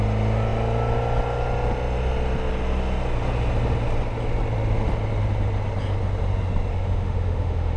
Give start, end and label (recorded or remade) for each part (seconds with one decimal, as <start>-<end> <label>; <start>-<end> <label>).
0.0-6.7 recorded; 6.7-7.8 remade